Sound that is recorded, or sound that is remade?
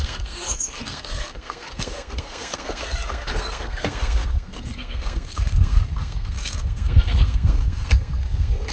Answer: remade